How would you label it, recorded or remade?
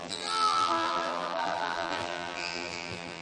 remade